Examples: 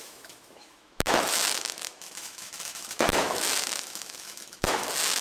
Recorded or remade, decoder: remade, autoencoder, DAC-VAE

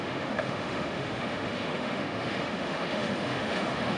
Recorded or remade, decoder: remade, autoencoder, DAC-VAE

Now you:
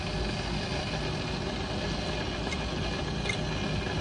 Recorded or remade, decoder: recorded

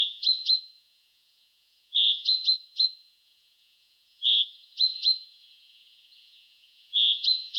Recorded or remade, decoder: remade, vocoder, Vocos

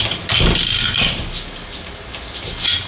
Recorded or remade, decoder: recorded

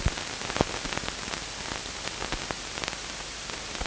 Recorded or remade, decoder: recorded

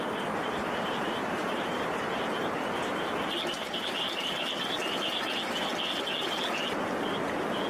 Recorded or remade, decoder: recorded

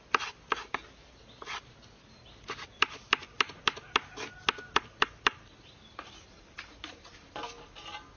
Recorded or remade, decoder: recorded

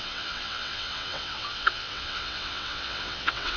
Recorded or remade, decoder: remade, vocoder, WaveNeXt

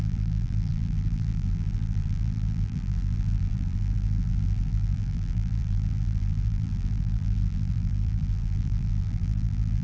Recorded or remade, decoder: remade, vocoder, BigVGAN v2